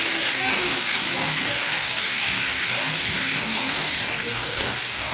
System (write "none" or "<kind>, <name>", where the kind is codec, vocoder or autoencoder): codec, DAC